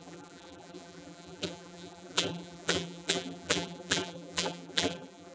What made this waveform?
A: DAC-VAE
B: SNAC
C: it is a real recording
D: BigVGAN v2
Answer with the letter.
D